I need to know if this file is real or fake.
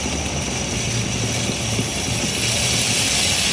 real